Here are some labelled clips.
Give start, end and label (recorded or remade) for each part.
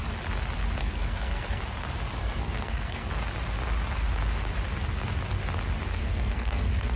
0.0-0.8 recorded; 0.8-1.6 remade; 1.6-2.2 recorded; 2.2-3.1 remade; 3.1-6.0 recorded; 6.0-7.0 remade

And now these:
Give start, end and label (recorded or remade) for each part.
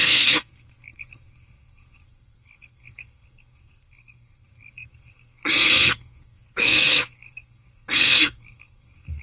0.0-9.2 remade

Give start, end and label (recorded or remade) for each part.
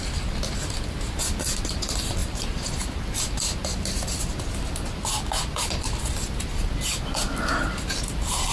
0.0-8.5 recorded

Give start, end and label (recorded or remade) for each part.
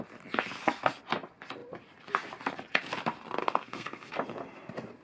0.0-3.4 recorded; 3.4-4.1 remade; 4.1-5.0 recorded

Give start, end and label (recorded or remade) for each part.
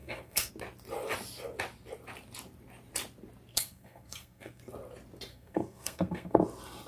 0.0-0.5 remade; 0.5-3.5 recorded; 3.5-4.6 remade; 4.6-5.3 recorded; 5.3-6.4 remade; 6.4-6.9 recorded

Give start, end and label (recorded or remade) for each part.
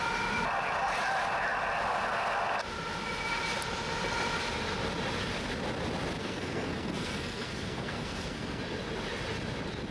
0.0-6.2 recorded; 6.2-8.6 remade; 8.6-9.9 recorded